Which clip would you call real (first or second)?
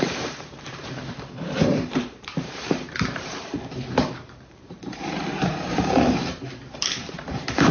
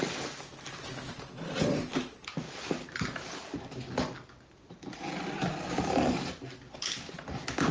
second